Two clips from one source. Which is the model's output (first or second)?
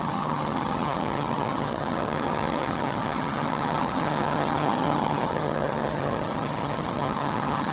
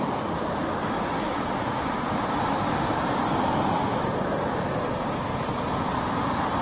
first